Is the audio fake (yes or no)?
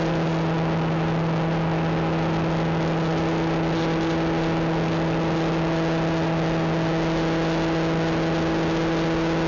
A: no